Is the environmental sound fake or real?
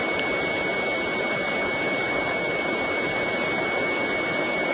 real